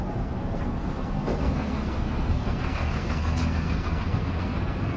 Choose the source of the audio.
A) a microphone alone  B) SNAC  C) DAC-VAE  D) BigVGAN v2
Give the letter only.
B